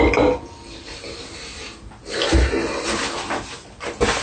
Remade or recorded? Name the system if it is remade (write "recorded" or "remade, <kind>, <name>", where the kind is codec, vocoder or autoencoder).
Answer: recorded